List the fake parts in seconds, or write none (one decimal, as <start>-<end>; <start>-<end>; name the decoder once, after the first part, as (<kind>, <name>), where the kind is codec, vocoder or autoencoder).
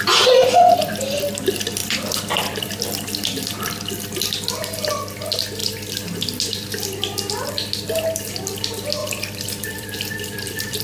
1.8-2.7 (vocoder, BigVGAN v2); 9.0-10.8